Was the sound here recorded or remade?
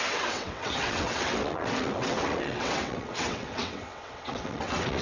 remade